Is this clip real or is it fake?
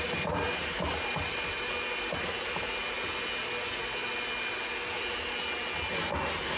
real